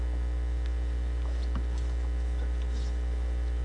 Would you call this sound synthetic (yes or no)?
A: no